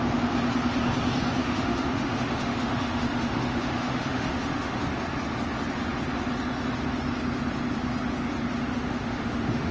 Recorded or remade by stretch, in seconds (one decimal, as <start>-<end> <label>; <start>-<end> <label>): 0.0-1.4 recorded; 1.4-4.8 remade; 4.8-8.7 recorded; 8.7-9.7 remade